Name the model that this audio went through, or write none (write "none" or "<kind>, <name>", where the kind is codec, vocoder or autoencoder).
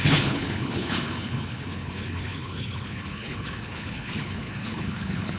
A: codec, HILCodec